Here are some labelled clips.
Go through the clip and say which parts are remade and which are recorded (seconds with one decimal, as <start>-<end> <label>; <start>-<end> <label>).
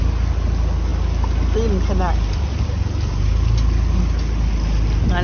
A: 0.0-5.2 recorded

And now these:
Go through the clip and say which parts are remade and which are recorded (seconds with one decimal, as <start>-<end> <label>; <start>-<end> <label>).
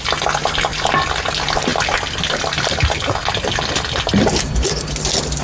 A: 0.0-5.4 recorded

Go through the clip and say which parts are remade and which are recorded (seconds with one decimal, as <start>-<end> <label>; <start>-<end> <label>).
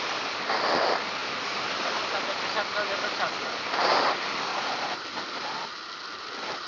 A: 0.0-4.5 recorded; 4.5-5.0 remade; 5.0-6.7 recorded